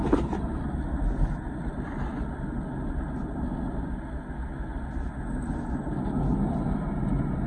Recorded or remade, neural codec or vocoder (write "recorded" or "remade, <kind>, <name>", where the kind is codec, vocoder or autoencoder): recorded